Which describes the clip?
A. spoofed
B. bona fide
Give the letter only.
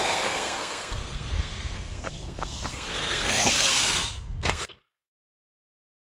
A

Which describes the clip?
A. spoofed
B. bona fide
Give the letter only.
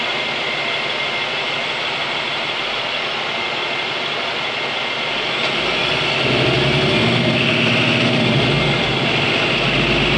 B